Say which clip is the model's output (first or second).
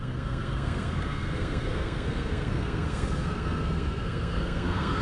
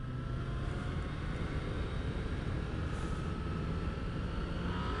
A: first